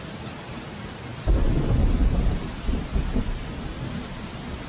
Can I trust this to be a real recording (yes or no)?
yes